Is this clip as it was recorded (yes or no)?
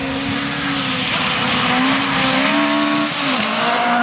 yes